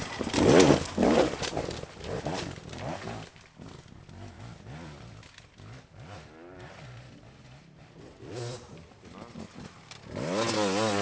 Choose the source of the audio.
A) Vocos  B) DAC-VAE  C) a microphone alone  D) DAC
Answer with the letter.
C